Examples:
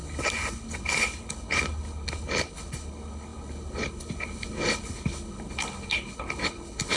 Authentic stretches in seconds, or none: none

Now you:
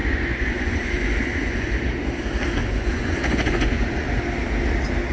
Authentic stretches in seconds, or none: 1.7-2.6; 4.1-5.1